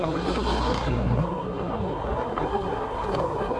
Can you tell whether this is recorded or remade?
remade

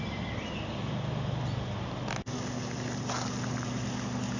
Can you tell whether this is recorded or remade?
recorded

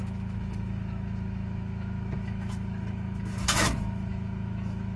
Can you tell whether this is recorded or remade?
remade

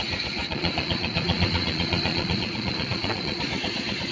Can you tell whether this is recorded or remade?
remade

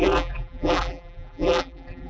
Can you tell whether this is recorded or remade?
remade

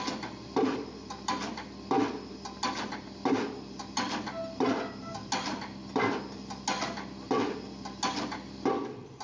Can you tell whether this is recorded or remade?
recorded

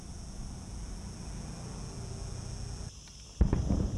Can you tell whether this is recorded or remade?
recorded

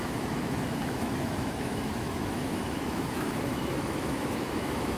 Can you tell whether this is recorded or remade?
remade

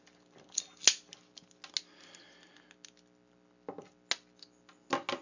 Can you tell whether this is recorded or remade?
recorded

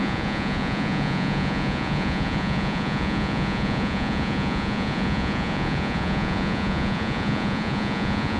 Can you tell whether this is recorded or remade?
remade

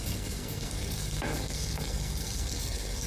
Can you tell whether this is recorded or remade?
remade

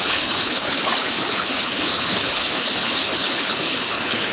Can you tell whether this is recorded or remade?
remade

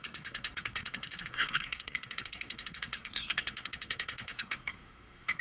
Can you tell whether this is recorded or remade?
remade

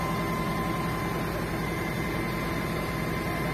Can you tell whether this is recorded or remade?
recorded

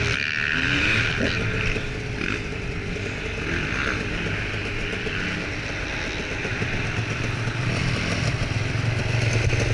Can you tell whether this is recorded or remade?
recorded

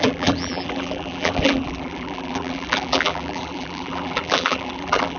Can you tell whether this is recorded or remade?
remade